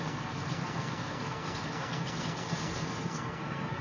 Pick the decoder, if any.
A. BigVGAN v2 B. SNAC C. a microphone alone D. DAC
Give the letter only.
B